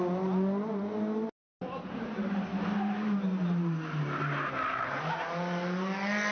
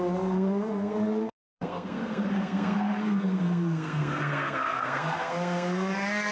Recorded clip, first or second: first